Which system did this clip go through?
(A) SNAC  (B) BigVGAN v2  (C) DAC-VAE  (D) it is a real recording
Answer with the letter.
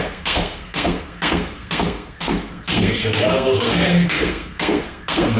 A